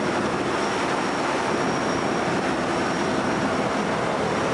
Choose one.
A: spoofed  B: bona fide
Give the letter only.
B